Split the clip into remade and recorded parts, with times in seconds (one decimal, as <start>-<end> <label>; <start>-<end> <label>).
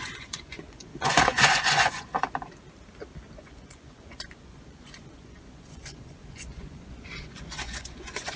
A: 0.0-2.1 remade; 2.1-3.4 recorded; 3.4-8.4 remade